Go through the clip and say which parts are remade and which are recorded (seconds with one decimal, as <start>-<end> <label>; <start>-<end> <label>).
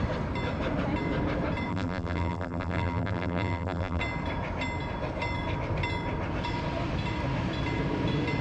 0.0-1.7 recorded; 1.7-4.0 remade; 4.0-8.4 recorded